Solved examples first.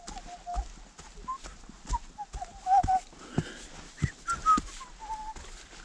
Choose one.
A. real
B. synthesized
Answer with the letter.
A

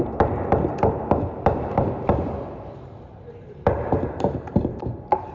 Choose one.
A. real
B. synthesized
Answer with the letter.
B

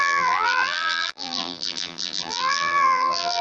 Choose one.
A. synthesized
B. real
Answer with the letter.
A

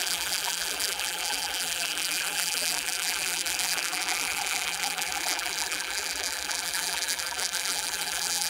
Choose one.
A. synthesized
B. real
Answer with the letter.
A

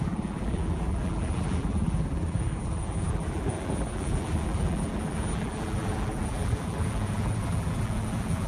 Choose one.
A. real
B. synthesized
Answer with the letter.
B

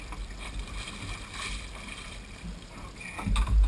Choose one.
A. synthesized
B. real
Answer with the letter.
B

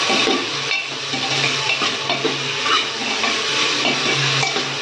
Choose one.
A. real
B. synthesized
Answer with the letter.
A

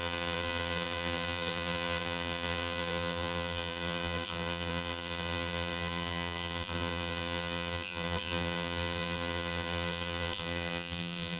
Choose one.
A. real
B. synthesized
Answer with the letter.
B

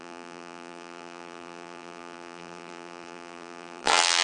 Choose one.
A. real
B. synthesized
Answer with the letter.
B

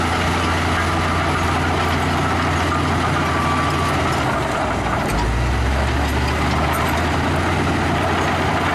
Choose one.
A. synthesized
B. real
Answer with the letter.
B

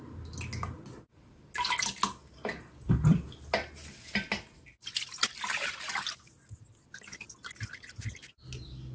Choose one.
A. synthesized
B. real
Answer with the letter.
B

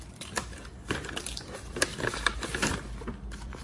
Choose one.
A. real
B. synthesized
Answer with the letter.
B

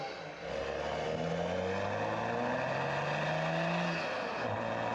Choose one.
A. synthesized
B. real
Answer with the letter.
B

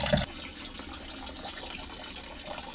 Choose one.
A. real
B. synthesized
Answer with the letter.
A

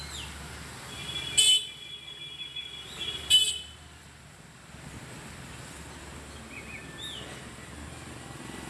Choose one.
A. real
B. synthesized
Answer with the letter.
A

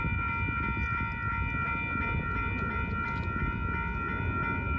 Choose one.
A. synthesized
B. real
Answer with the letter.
B